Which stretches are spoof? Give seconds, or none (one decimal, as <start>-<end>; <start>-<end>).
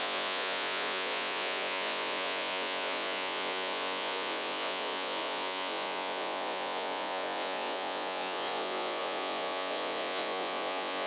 0.0-11.1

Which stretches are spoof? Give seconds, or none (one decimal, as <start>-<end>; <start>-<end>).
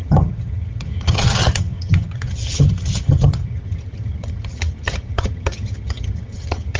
0.0-6.8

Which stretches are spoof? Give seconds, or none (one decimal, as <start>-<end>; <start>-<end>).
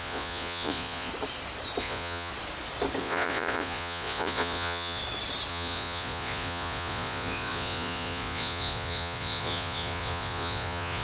0.0-1.1; 1.8-2.3; 3.0-5.0; 5.5-11.0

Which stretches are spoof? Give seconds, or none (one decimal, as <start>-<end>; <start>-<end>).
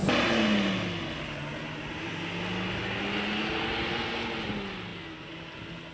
none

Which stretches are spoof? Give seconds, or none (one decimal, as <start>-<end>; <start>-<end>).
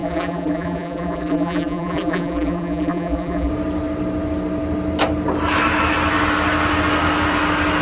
0.0-3.5